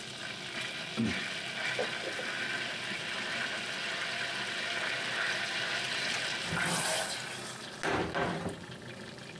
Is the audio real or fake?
real